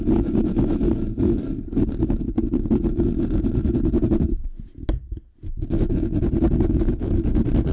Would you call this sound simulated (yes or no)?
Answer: no